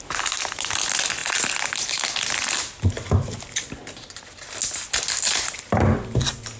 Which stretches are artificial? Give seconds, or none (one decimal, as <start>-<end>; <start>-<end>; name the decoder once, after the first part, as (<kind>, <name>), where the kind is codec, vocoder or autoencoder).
none